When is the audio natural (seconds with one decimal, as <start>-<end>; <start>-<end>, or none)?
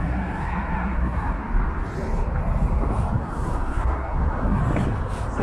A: 1.4-3.2; 4.6-5.4